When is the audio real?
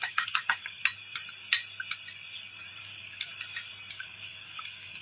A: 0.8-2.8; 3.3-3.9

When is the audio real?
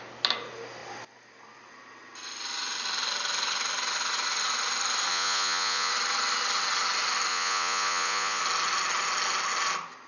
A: 0.0-5.1; 5.9-7.3; 8.4-10.1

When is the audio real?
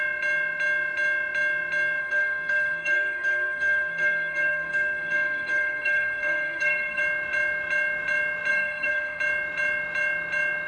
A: 0.0-2.0; 7.0-8.5; 9.2-10.7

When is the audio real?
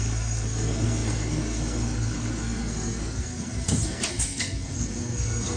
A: none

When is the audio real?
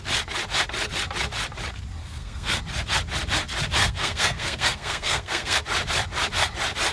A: 0.0-2.0; 2.6-3.8; 5.6-6.9